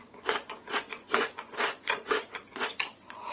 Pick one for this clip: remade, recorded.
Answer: remade